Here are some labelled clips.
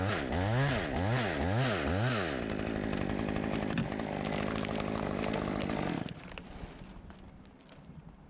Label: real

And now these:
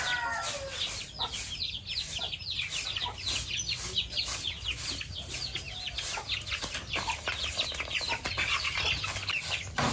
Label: real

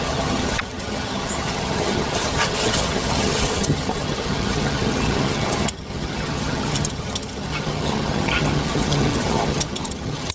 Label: fake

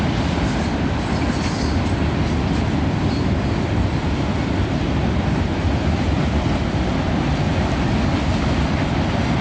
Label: real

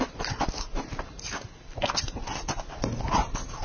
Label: real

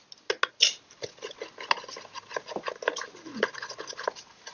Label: real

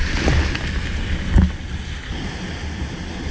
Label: real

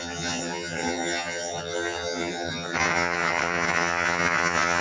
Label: fake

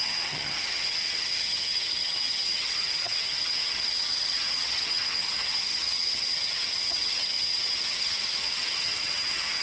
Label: fake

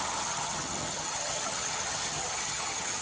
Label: fake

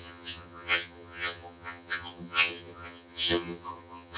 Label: fake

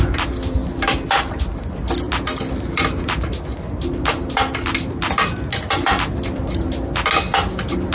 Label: real